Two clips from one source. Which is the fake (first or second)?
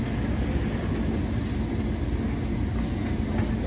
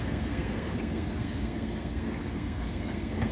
second